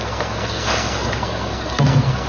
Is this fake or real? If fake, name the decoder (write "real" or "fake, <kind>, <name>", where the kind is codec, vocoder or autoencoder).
fake, codec, SNAC